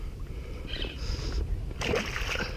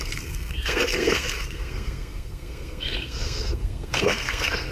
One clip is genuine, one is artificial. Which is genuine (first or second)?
first